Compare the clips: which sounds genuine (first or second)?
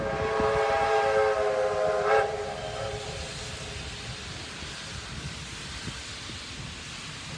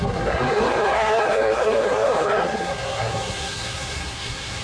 first